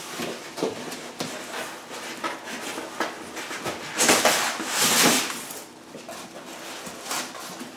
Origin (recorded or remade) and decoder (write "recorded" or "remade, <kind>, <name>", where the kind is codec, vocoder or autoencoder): recorded